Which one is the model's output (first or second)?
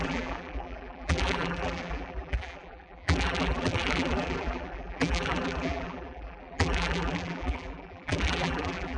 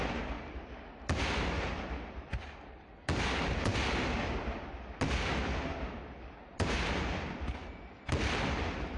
first